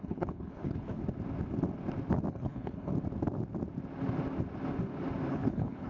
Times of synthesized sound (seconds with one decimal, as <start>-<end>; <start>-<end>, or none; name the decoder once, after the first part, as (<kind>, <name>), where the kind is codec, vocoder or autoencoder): 0.0-1.0 (codec, HILCodec); 2.3-2.9; 5.3-5.9